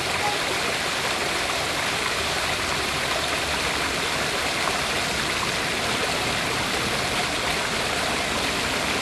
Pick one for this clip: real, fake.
real